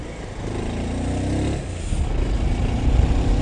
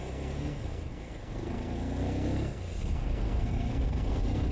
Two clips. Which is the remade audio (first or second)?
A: second